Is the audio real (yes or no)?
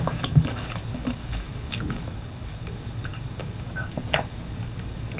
no